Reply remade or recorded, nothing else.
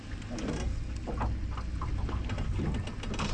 recorded